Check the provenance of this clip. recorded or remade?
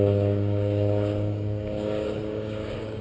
remade